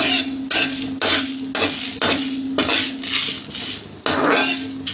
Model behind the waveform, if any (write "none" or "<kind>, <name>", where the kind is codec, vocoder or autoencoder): none